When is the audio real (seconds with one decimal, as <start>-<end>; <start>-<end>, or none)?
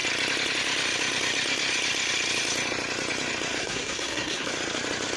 0.0-3.6; 4.5-5.2